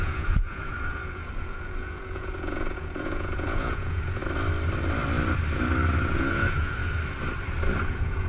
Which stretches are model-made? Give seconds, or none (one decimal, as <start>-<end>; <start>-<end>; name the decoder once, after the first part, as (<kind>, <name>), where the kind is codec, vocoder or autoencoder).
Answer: 0.0-4.2 (vocoder, Vocos); 6.1-6.8; 7.9-8.3